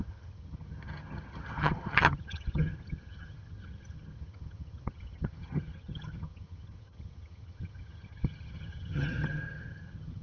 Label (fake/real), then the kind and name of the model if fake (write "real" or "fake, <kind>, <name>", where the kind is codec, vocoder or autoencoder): fake, vocoder, HiFi-GAN